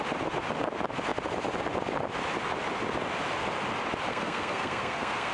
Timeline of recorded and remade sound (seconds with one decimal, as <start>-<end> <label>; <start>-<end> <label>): 0.0-4.1 recorded; 4.1-5.3 remade